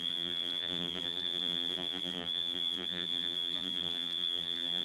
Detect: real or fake fake